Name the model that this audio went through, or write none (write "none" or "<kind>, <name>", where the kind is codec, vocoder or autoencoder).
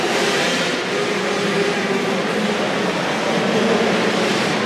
none